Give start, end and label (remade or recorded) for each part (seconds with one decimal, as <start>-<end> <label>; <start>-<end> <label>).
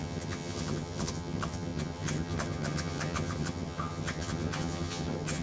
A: 0.0-5.4 remade